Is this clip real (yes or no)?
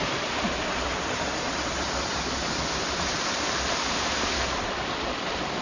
yes